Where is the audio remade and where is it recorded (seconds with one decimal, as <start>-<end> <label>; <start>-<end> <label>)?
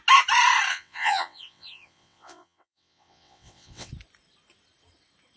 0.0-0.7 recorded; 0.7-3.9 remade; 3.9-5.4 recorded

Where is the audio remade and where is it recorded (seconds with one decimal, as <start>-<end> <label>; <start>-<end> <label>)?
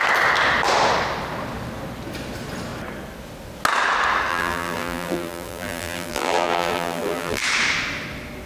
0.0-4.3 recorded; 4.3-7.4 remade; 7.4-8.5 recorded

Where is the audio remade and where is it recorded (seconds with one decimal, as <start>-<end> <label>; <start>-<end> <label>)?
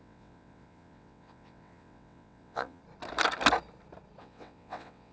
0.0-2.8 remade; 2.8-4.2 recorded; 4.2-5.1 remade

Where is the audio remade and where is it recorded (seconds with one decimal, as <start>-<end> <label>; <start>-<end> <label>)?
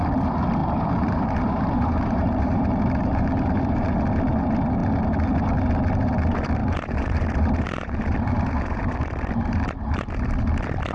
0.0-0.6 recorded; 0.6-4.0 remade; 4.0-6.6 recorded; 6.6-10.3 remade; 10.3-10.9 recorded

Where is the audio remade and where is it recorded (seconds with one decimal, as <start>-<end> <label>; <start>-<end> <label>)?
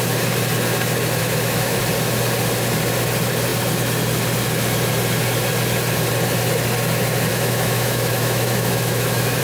0.0-1.2 recorded; 1.2-1.8 remade; 1.8-7.3 recorded; 7.3-9.4 remade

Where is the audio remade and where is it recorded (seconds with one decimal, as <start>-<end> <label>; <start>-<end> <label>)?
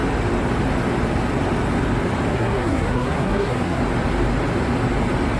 0.0-2.3 recorded; 2.3-3.8 remade; 3.8-5.4 recorded